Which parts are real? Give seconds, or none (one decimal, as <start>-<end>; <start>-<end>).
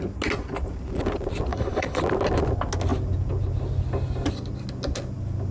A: 0.0-1.5; 2.0-5.5